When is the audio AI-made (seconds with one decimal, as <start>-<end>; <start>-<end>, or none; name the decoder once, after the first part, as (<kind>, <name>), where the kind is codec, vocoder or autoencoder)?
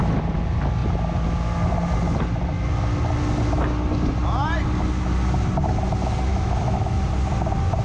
6.3-7.0 (autoencoder, DAC-VAE)